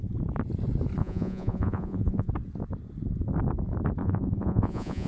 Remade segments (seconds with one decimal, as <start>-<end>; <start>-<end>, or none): 1.0-2.3; 4.0-5.1